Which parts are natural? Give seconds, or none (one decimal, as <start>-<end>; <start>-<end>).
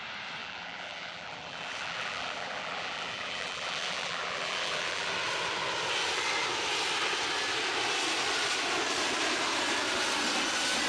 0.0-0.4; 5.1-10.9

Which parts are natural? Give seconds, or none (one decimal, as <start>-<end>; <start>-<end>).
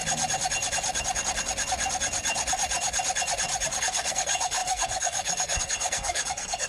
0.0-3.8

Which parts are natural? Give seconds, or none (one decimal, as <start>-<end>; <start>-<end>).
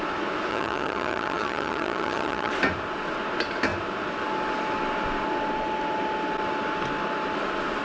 0.0-0.5; 2.5-7.8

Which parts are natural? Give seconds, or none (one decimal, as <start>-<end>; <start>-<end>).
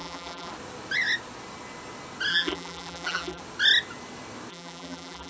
0.5-2.3; 3.4-4.5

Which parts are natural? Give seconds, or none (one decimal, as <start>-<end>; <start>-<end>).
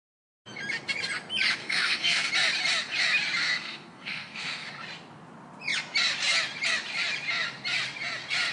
0.0-1.6; 2.3-3.4; 4.7-8.5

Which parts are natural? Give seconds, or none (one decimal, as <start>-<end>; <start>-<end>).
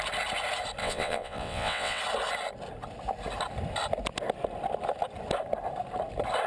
0.0-0.8; 2.0-6.5